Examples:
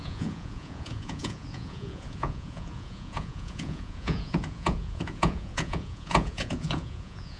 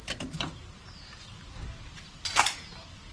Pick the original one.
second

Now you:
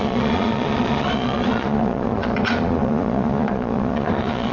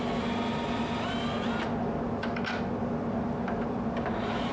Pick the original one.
second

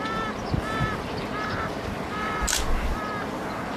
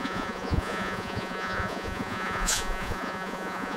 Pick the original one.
first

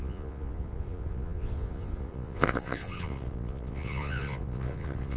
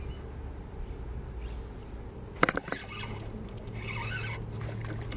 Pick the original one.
second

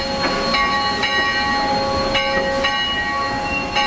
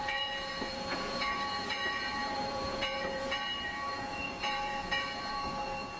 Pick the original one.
first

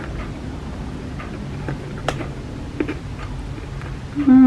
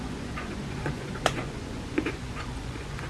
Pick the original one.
first